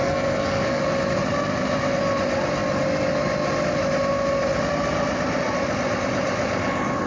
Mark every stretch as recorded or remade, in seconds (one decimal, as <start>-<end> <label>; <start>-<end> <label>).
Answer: 0.0-0.8 remade; 0.8-7.1 recorded